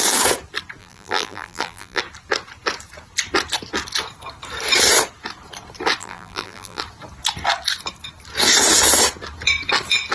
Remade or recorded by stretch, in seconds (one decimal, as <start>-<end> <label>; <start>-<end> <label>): 0.0-0.8 recorded; 0.8-2.0 remade; 2.0-6.0 recorded; 6.0-6.8 remade; 6.8-10.1 recorded